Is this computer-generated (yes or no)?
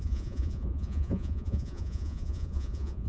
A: yes